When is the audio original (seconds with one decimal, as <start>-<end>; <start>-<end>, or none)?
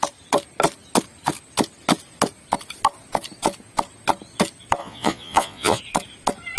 0.0-4.8; 5.8-6.6